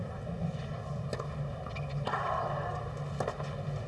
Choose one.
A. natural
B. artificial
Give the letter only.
A